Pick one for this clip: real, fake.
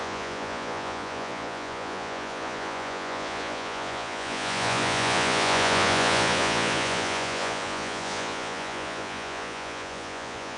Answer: fake